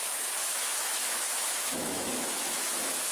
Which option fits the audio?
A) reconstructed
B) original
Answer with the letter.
A